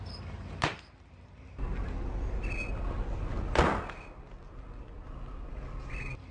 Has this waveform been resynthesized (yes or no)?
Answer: no